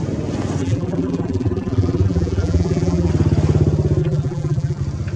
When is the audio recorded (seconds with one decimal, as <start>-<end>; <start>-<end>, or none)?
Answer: 0.0-0.6; 3.1-4.0; 4.8-5.2

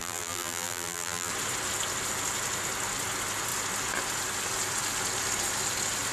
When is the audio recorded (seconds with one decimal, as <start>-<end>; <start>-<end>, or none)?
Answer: 1.3-6.1

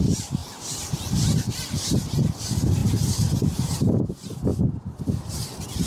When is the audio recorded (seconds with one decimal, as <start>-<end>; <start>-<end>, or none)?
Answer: 0.0-4.5; 5.0-5.9

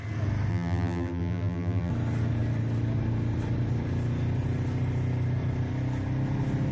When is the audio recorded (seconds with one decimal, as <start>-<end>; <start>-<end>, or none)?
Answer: 0.0-0.5; 1.9-6.7

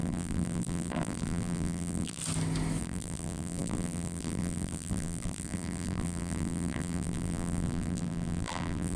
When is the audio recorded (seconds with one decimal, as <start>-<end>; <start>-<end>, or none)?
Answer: 2.2-2.8

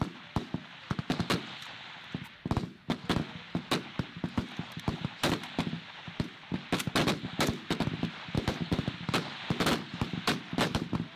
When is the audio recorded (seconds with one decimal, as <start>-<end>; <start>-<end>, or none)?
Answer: 0.0-11.2

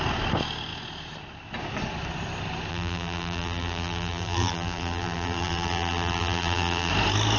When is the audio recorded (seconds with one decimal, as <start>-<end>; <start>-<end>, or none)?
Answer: 0.0-2.7; 6.9-7.4